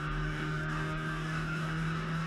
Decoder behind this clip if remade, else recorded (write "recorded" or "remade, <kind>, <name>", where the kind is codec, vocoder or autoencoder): remade, codec, DAC